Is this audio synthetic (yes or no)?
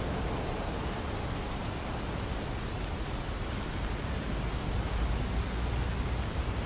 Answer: no